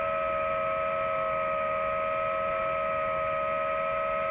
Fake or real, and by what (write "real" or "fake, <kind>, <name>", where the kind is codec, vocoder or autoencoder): real